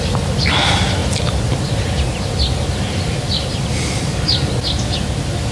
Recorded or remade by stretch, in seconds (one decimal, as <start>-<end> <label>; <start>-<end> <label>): 0.0-5.5 recorded